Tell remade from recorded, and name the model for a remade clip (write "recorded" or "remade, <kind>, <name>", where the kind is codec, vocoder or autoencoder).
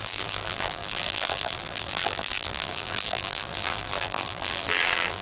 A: remade, vocoder, BigVGAN v2